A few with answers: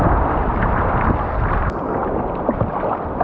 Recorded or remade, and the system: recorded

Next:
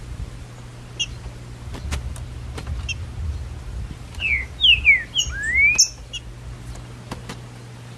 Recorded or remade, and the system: recorded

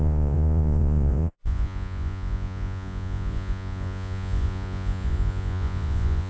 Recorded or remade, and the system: remade, vocoder, Vocos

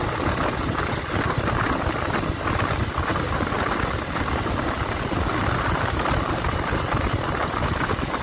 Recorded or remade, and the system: recorded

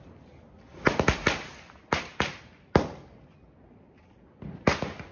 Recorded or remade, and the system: recorded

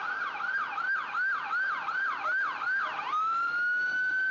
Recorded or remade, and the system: recorded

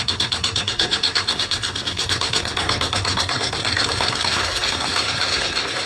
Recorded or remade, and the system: remade, codec, SNAC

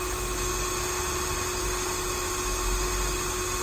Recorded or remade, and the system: recorded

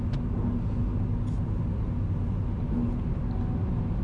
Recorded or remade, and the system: recorded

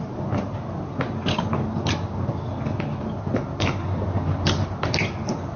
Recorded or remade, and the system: recorded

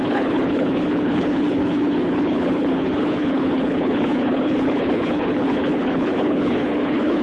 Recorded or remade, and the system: remade, codec, HILCodec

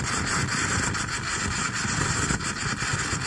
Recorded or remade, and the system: recorded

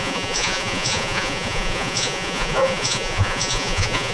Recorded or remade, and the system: remade, vocoder, Vocos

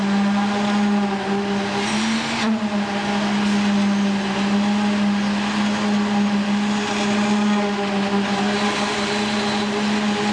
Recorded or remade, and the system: recorded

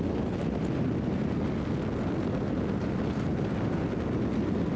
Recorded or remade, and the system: recorded